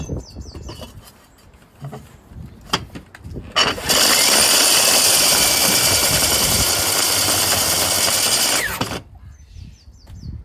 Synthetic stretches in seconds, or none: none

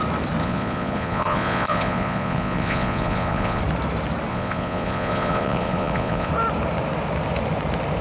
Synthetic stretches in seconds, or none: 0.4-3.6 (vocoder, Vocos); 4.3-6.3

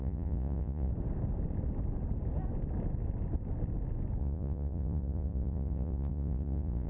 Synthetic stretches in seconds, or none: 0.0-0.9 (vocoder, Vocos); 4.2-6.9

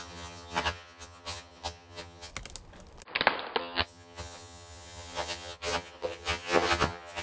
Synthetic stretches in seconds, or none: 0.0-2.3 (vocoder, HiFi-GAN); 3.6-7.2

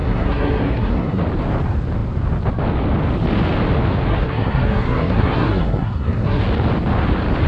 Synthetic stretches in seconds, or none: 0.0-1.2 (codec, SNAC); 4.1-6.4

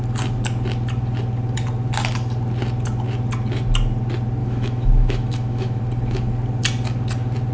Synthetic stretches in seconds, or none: 4.4-5.8 (autoencoder, DAC-VAE)

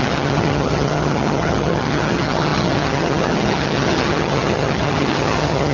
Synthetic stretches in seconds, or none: 0.0-5.7 (vocoder, HiFi-GAN)